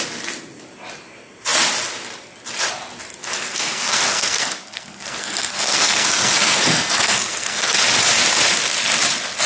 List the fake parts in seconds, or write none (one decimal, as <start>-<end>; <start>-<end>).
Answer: 3.2-7.8